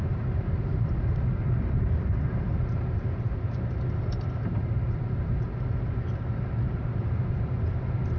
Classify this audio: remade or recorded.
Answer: remade